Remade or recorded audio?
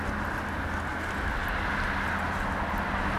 recorded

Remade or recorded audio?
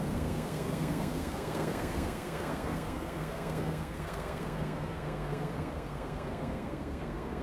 remade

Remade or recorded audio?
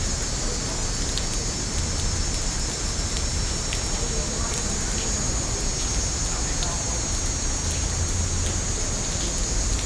recorded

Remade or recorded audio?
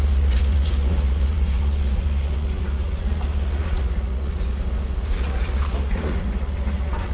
remade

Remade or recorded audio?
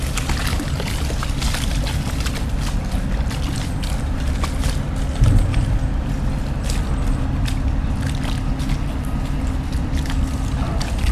recorded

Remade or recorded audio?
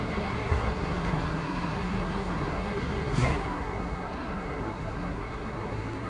remade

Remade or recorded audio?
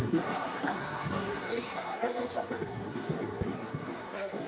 remade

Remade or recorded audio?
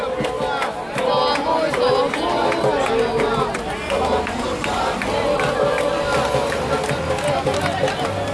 recorded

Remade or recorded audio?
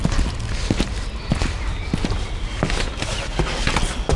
recorded